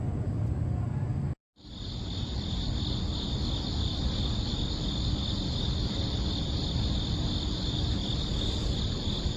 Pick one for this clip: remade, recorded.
recorded